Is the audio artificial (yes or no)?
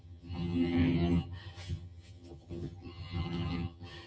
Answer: yes